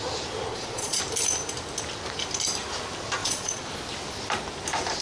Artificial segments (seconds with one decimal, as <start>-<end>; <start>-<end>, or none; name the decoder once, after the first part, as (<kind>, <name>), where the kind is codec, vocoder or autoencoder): 0.5-1.0 (vocoder, Vocos); 3.2-3.7